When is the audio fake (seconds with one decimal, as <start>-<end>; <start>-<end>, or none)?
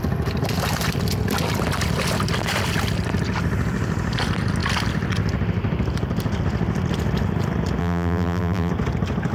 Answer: 7.8-8.7